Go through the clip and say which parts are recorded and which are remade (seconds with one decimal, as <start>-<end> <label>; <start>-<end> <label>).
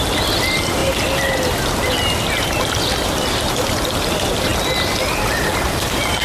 0.0-6.2 recorded